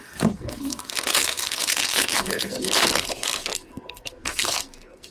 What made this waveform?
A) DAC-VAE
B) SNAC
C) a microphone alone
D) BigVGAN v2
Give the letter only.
B